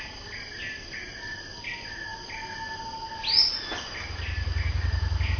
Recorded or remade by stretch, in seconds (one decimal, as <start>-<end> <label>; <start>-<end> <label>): 0.0-5.4 recorded

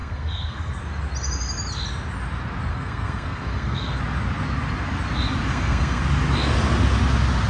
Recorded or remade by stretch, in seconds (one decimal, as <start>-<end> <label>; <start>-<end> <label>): 0.0-0.8 remade; 0.8-2.7 recorded; 2.7-4.0 remade; 4.0-5.5 recorded; 5.5-6.0 remade; 6.0-7.5 recorded

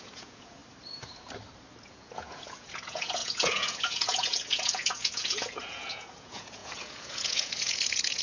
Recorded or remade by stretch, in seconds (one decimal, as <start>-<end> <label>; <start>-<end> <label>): 0.0-0.6 remade; 0.6-1.8 recorded; 1.8-8.2 remade

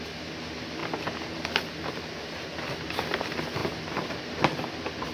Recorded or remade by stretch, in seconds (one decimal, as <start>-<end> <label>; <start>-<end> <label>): 0.0-5.1 recorded

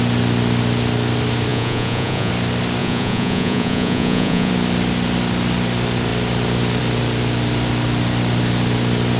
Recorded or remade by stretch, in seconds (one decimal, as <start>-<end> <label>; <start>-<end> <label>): 0.0-1.5 recorded; 1.5-2.3 remade; 2.3-2.8 recorded; 2.8-4.5 remade; 4.5-9.2 recorded